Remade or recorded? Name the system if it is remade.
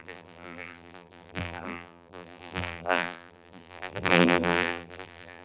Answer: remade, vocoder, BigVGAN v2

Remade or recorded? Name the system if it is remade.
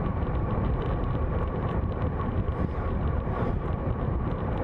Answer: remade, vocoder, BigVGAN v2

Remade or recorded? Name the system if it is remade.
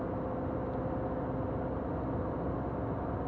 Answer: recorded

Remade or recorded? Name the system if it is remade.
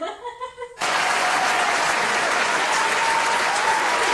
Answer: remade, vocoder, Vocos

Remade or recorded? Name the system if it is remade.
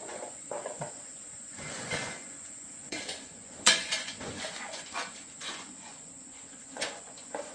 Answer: remade, vocoder, Vocos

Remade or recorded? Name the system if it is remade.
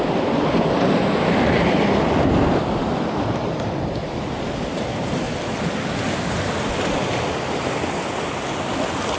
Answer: recorded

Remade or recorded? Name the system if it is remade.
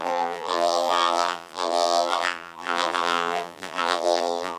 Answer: remade, vocoder, BigVGAN v2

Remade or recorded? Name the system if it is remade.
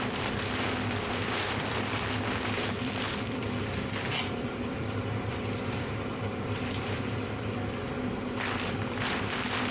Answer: remade, vocoder, BigVGAN v2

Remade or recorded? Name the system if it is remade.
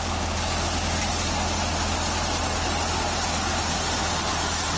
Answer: recorded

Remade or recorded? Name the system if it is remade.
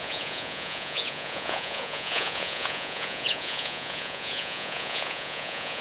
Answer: remade, vocoder, Vocos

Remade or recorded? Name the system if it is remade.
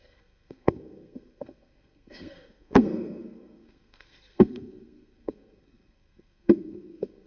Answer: remade, codec, SNAC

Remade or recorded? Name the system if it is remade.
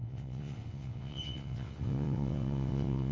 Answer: remade, vocoder, WaveNeXt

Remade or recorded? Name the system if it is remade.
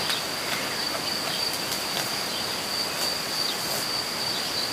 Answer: recorded